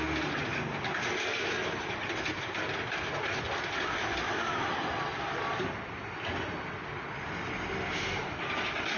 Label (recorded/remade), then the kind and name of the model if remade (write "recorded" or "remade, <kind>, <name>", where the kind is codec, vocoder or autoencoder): recorded